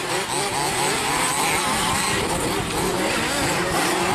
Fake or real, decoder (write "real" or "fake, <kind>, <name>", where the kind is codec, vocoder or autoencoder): real